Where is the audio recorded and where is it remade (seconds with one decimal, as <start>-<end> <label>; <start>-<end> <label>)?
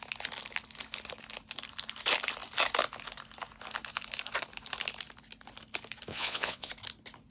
0.0-6.1 recorded; 6.1-6.7 remade; 6.7-7.3 recorded